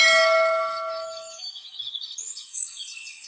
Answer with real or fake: fake